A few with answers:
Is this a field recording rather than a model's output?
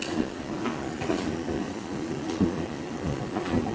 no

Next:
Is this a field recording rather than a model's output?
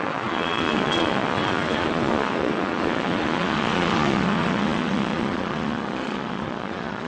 no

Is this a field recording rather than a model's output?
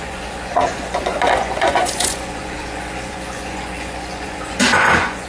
no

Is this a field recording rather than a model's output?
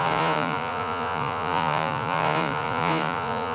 no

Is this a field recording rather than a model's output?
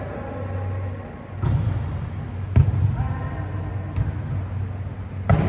yes